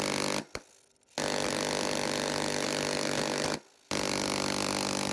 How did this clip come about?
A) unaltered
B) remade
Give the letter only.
A